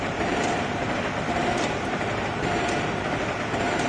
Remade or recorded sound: remade